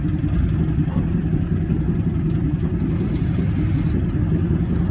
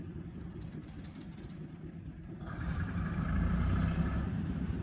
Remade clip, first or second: second